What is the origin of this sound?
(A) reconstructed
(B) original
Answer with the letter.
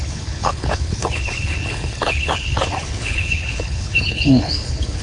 A